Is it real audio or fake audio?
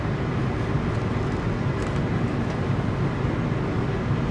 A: real